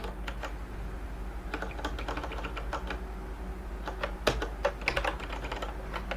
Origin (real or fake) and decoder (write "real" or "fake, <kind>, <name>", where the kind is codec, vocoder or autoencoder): real